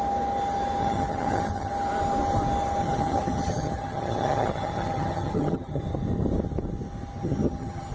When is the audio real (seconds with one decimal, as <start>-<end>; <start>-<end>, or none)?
0.0-0.8; 1.7-2.8; 5.8-7.2